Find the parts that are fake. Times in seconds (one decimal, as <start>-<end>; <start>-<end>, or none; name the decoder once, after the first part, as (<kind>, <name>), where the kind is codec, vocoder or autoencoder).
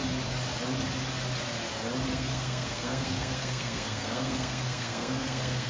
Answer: 2.1-5.7 (codec, SNAC)